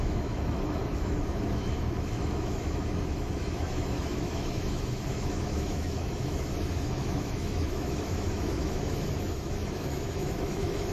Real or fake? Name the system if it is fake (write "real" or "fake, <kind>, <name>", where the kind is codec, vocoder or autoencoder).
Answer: fake, autoencoder, DAC-VAE